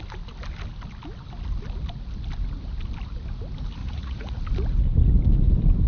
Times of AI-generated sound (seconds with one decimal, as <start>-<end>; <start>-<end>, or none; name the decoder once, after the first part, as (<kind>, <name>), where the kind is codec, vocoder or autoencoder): 3.8-4.4 (vocoder, Vocos)